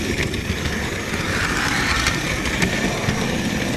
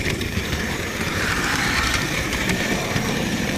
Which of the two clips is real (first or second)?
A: first